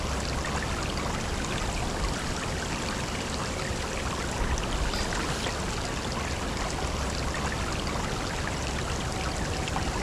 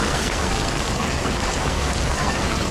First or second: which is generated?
second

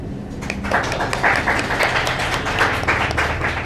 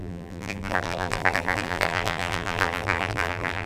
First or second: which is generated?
second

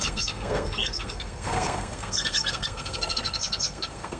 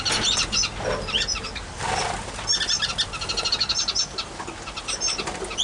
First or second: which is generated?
first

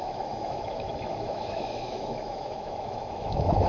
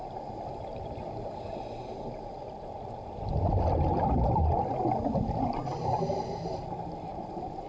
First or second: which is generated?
first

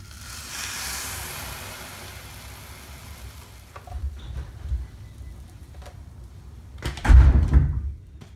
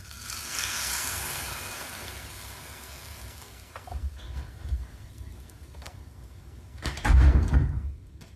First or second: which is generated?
second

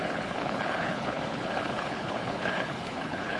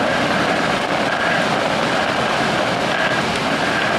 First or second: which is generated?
first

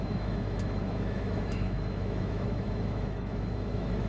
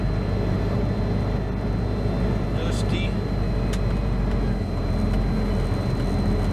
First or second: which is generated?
first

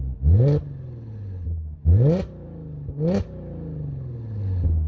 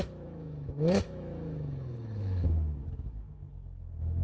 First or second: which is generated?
second